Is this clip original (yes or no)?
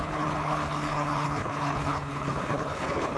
no